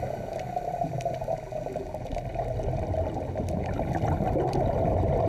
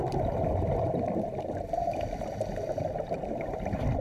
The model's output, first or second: second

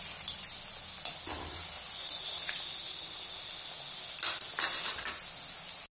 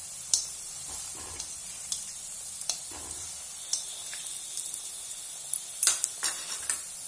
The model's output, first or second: second